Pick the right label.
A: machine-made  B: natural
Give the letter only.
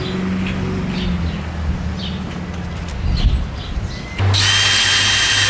B